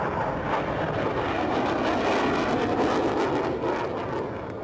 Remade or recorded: recorded